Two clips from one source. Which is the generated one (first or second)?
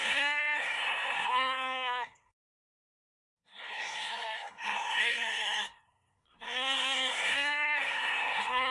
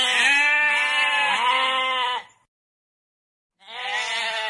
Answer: first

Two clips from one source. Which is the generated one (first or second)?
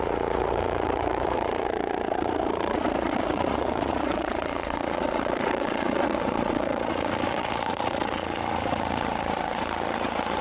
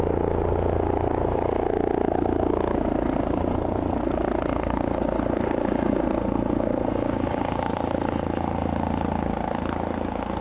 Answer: first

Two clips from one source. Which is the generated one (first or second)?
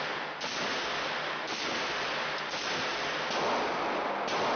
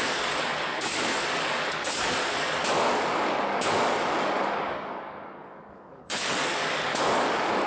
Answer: second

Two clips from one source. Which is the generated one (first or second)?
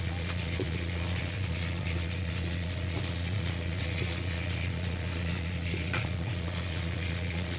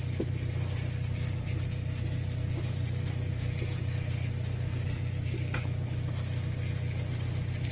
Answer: first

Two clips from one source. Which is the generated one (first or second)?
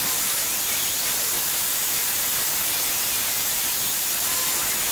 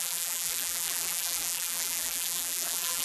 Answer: second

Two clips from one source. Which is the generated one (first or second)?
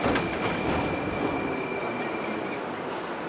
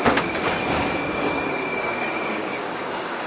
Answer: second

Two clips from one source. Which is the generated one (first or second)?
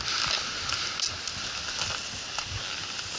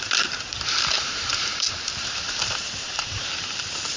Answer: second